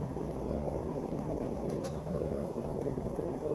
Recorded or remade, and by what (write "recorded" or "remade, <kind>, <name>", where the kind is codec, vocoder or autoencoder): remade, codec, SNAC